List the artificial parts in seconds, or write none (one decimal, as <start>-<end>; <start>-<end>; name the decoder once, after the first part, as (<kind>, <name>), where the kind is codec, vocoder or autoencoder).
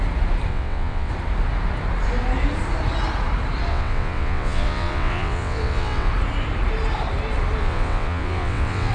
0.5-1.1 (vocoder, WaveNeXt); 3.7-6.1; 7.6-8.9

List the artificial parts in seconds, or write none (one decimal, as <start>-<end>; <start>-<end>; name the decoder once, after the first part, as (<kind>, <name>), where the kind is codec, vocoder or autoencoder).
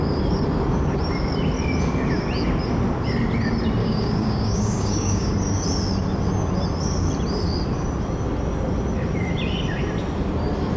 3.8-5.3 (codec, DAC)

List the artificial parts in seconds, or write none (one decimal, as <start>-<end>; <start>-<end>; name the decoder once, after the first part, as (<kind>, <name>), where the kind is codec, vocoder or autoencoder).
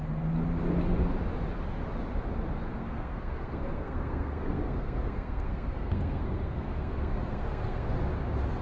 2.7-7.9 (codec, SNAC)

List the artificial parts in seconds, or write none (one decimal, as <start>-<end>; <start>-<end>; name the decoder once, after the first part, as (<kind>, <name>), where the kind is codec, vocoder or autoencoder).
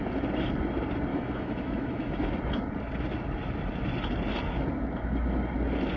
1.1-2.3 (autoencoder, DAC-VAE)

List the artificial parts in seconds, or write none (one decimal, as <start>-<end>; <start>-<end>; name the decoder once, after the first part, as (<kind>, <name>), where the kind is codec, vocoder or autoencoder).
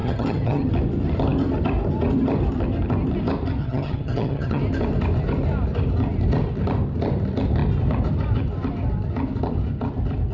0.0-0.7 (vocoder, HiFi-GAN); 3.6-4.6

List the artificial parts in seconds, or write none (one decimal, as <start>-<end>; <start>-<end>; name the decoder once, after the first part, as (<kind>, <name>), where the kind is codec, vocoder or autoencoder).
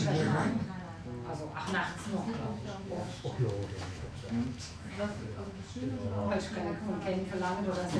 2.1-6.4 (autoencoder, DAC-VAE)